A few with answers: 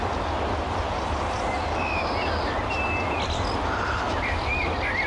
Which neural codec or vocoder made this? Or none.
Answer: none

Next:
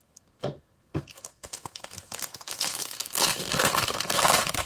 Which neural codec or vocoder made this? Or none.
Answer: codec, SNAC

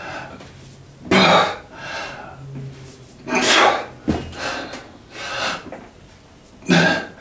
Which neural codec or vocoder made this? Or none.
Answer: none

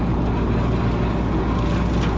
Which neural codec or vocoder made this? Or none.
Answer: none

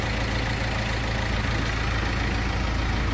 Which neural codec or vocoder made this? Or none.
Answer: none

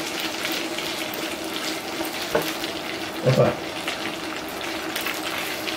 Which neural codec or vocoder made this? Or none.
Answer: none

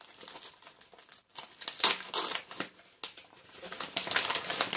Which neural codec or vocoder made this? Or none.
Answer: none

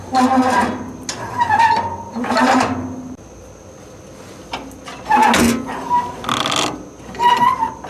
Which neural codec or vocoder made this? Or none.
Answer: none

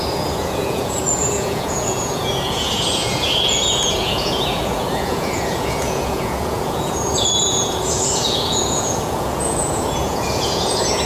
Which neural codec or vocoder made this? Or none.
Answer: vocoder, Vocos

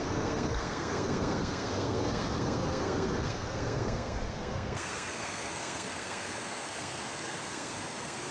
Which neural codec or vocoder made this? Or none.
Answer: codec, SNAC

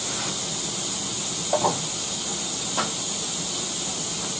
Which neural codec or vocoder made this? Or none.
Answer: none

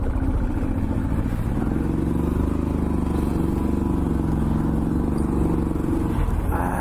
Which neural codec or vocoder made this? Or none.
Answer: none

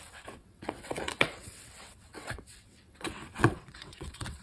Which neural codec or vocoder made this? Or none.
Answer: vocoder, WaveNeXt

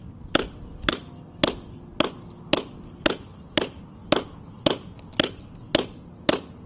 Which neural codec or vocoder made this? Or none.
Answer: none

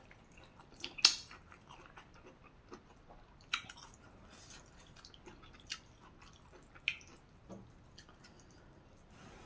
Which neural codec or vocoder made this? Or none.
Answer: none